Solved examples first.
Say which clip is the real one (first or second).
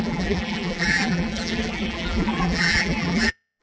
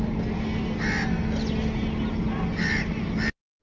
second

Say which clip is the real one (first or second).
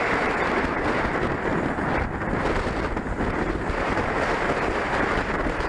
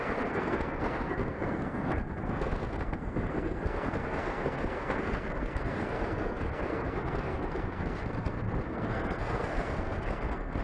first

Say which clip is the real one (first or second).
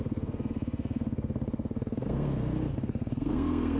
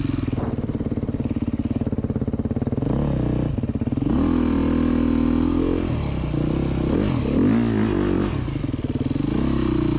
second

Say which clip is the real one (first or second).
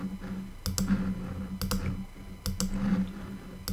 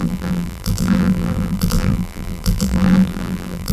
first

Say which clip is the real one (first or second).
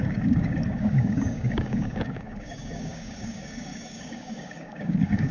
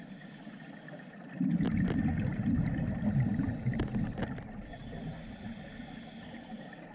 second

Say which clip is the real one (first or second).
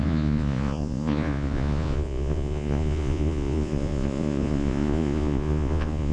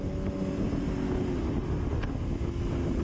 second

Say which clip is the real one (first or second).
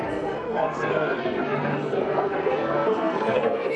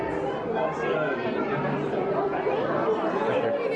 second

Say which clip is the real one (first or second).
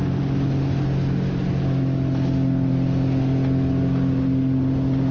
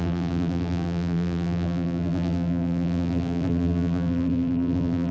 first